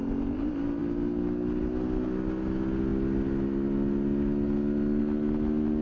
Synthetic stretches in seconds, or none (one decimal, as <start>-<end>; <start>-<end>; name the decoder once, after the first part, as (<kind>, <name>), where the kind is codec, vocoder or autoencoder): none